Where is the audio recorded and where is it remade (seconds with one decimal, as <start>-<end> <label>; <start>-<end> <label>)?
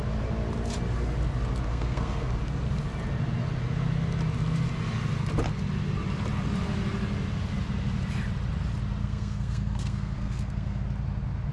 0.0-1.7 recorded; 1.7-2.3 remade; 2.3-9.0 recorded; 9.0-10.8 remade; 10.8-11.5 recorded